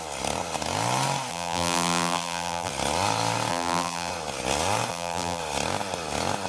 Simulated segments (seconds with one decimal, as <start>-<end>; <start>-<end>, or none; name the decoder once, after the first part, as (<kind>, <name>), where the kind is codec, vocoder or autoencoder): 1.3-2.7 (vocoder, BigVGAN v2); 3.5-4.1; 4.9-5.4